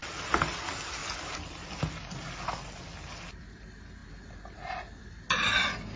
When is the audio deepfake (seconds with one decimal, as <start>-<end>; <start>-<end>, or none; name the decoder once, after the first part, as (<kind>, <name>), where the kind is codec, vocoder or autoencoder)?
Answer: none